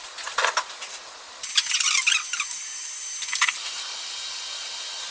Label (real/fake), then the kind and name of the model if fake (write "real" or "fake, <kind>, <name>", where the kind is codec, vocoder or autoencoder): real